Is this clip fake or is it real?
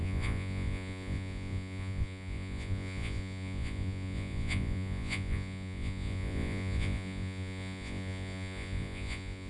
fake